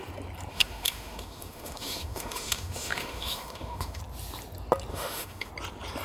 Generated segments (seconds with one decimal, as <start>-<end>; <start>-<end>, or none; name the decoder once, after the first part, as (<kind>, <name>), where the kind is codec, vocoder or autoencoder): 0.5-4.0 (autoencoder, DAC-VAE); 4.9-5.5